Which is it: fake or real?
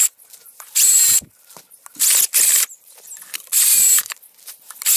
real